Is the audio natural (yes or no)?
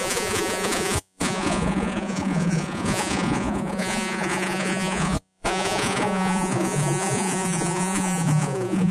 no